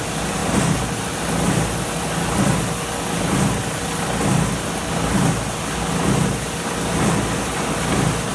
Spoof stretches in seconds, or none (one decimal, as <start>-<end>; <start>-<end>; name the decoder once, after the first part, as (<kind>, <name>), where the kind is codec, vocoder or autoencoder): none